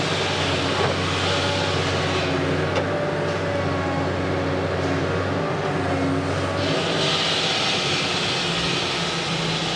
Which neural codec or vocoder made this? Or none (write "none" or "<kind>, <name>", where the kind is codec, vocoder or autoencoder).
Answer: none